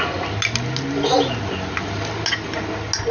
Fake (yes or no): no